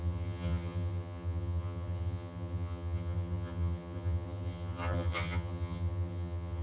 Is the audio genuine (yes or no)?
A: no